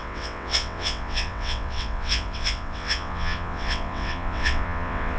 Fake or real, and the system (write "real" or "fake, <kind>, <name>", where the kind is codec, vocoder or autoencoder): fake, vocoder, WaveNeXt